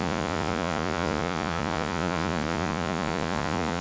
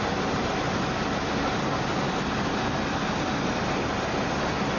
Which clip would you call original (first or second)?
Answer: second